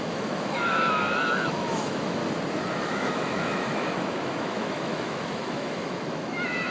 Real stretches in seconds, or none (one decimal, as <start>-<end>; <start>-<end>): 2.2-2.8